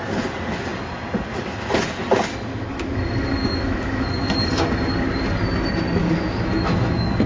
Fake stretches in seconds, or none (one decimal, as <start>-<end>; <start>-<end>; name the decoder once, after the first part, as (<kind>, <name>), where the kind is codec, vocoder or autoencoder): 2.5-4.5 (autoencoder, DAC-VAE); 6.0-7.3